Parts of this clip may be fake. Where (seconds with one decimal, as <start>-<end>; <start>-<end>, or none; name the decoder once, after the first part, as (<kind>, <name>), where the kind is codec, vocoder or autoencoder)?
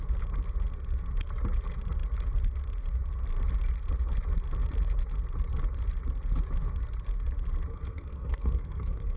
7.7-9.2 (codec, SNAC)